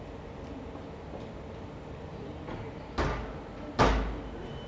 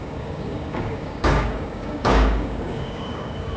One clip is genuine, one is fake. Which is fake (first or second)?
second